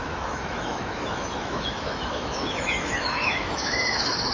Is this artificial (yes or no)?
yes